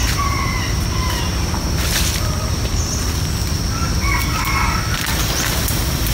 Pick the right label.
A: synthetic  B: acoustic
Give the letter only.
B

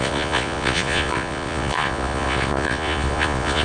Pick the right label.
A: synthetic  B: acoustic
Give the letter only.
A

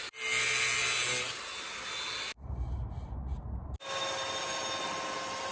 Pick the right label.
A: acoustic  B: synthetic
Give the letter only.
A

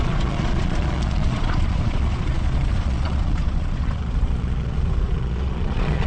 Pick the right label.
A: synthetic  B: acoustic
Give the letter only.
A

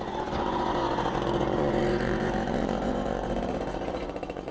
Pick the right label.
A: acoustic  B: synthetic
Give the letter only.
B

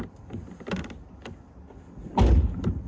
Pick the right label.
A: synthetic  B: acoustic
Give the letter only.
B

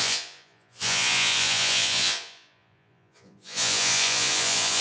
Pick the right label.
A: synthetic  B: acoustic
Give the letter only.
A